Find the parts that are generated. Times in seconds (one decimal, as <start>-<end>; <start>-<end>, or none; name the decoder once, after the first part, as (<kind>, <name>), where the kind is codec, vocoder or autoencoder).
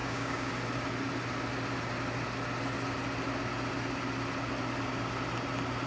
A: 0.0-0.5 (codec, DAC)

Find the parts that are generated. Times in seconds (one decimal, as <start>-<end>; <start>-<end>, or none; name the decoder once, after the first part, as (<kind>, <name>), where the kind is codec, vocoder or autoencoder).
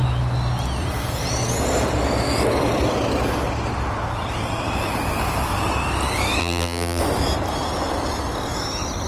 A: 6.4-7.0 (vocoder, BigVGAN v2)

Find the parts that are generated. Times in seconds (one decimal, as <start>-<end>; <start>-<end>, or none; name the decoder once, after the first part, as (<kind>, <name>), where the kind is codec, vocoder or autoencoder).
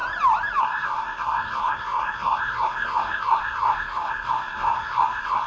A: 0.6-5.5 (codec, SNAC)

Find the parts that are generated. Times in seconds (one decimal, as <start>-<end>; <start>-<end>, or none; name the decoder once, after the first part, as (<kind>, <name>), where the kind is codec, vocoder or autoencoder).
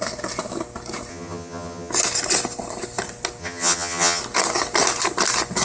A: 1.1-1.9 (vocoder, HiFi-GAN); 3.4-4.2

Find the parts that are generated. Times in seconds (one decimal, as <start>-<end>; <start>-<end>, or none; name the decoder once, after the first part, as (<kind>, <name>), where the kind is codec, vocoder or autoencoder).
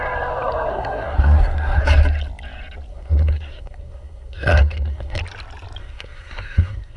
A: 0.7-1.8 (codec, SNAC); 2.9-5.2; 5.8-7.0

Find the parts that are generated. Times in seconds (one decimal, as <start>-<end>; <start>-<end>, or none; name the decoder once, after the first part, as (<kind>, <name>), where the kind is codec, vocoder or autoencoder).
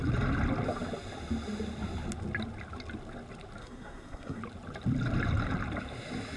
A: 3.6-4.4 (codec, SNAC)